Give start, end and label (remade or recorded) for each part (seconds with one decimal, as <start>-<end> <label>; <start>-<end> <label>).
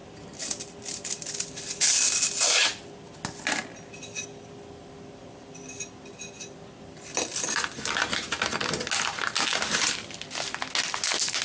0.0-11.4 recorded